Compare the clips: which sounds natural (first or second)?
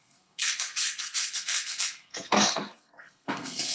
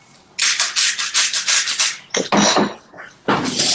second